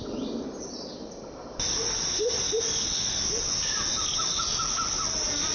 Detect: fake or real real